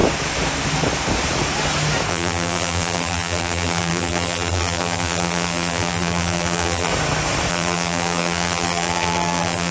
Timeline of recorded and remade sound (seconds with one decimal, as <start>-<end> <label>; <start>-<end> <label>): 0.0-2.1 recorded; 2.1-6.9 remade; 6.9-7.5 recorded; 7.5-9.7 remade

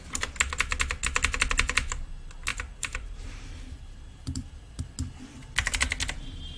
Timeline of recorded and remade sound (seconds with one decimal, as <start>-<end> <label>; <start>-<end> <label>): 0.0-2.5 recorded; 2.5-4.8 remade; 4.8-6.6 recorded

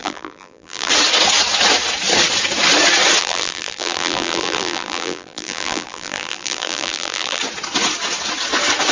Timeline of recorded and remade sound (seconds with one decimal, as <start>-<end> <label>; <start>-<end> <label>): 0.0-0.9 remade; 0.9-3.2 recorded; 3.2-7.4 remade; 7.4-8.9 recorded

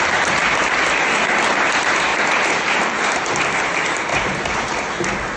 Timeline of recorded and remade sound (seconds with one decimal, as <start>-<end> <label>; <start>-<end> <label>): 0.0-2.1 recorded; 2.1-3.4 remade; 3.4-4.1 recorded; 4.1-4.9 remade; 4.9-5.4 recorded

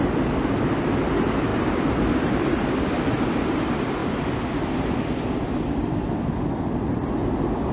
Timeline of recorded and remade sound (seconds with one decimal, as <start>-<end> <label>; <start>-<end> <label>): 0.0-1.5 recorded; 1.5-2.5 remade; 2.5-7.7 recorded

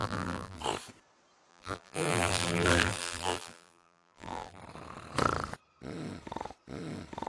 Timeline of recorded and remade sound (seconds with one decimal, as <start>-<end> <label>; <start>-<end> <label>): 0.0-0.6 remade; 0.6-1.5 recorded; 1.5-4.6 remade; 4.6-7.3 recorded

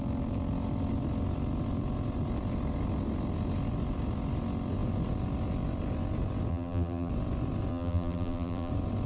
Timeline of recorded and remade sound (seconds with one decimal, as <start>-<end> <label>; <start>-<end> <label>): 0.0-6.5 recorded; 6.5-7.1 remade; 7.1-7.7 recorded; 7.7-8.7 remade; 8.7-9.1 recorded

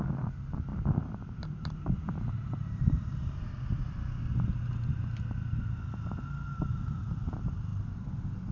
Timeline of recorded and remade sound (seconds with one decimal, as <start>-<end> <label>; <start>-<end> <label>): 0.0-0.7 recorded; 0.7-3.4 remade; 3.4-8.5 recorded